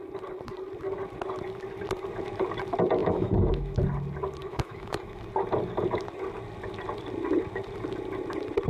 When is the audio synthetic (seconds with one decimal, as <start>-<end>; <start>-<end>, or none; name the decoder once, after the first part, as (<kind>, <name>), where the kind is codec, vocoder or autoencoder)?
3.0-3.8 (autoencoder, DAC-VAE); 4.4-5.2